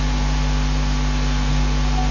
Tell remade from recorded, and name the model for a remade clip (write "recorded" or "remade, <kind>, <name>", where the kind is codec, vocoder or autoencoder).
recorded